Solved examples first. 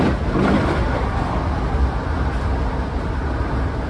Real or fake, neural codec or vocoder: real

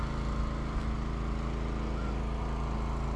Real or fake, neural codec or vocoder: real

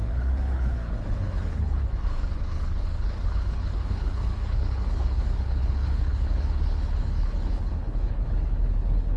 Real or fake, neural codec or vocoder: fake, codec, HILCodec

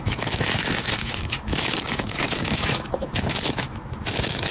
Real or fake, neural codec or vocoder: fake, autoencoder, DAC-VAE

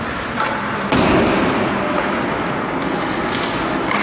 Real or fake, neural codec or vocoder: real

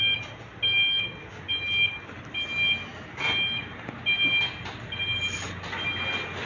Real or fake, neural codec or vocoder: real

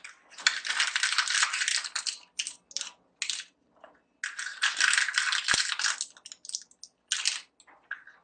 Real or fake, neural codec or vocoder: real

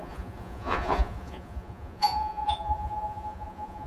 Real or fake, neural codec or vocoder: fake, vocoder, Vocos